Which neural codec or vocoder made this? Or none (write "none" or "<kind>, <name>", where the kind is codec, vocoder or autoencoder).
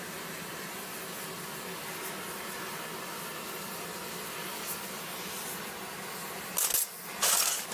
none